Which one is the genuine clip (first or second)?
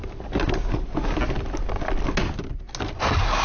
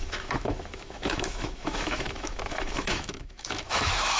first